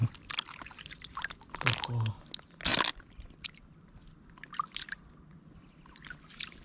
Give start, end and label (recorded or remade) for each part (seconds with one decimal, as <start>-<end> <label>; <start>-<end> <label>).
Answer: 0.0-2.1 remade; 2.1-2.7 recorded; 2.7-3.2 remade; 3.2-6.6 recorded